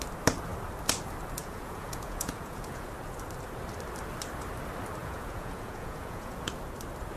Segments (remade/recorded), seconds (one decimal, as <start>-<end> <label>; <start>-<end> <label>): 0.0-1.4 recorded; 1.4-2.9 remade; 2.9-5.0 recorded; 5.0-6.5 remade; 6.5-7.2 recorded